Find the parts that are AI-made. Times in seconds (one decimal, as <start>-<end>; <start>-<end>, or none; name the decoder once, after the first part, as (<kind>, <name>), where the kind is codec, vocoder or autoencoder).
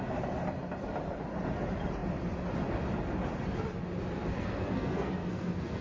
4.3-5.8 (codec, SNAC)